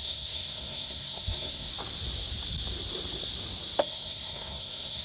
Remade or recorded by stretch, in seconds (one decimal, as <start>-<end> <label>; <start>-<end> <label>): 0.0-1.7 remade; 1.7-3.8 recorded; 3.8-5.0 remade